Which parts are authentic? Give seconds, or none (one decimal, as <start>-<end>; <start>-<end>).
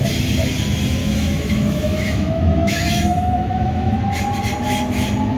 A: 0.0-1.0; 4.0-5.4